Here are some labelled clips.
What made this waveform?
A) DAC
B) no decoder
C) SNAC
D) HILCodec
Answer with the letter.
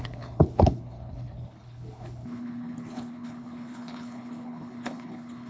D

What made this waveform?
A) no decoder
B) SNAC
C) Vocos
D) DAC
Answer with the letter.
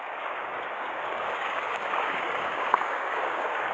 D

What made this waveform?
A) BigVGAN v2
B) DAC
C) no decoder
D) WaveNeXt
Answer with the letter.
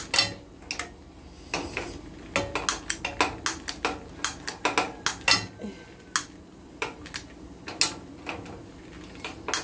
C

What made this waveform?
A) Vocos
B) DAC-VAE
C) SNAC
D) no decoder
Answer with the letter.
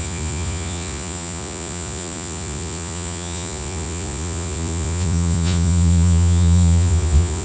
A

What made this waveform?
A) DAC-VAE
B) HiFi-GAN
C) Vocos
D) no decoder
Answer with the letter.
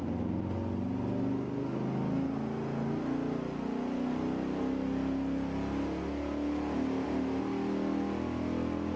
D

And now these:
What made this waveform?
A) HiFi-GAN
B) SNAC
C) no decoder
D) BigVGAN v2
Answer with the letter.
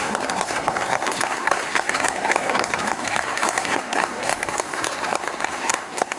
B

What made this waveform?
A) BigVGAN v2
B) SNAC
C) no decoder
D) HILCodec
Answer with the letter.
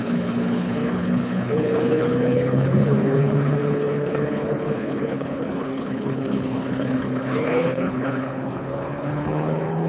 D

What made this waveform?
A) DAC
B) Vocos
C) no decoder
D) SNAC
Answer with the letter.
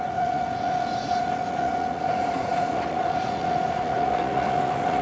B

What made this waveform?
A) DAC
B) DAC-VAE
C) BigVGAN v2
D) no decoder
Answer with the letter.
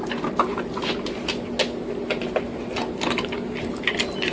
D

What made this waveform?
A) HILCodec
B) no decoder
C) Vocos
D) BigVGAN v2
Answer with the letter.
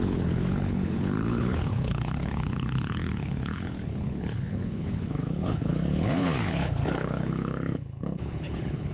A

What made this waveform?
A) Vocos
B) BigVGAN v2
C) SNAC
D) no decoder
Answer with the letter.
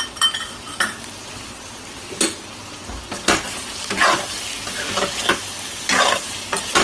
D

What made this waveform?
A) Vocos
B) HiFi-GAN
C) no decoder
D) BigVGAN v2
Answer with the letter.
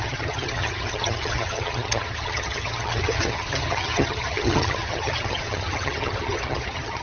B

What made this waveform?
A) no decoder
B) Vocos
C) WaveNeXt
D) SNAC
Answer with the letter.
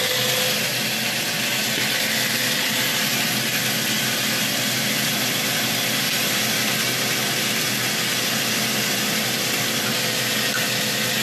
A